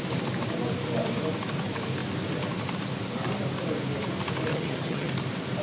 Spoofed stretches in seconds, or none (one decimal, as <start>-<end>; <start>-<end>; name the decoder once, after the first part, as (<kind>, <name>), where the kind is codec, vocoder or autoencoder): 4.5-5.1 (vocoder, HiFi-GAN)